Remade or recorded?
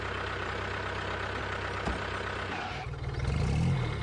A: recorded